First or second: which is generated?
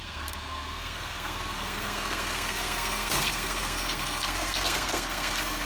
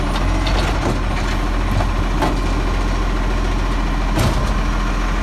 first